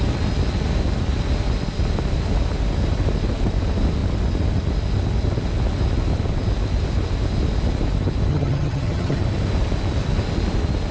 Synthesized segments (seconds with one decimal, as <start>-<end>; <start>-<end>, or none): 8.3-9.2